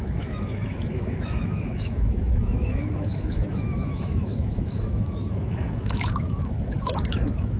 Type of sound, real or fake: fake